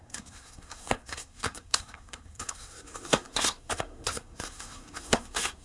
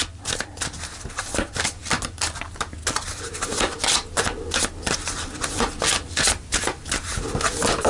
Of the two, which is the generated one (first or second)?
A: first